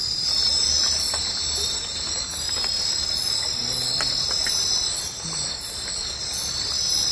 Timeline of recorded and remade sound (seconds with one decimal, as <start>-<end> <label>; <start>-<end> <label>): 0.0-7.1 recorded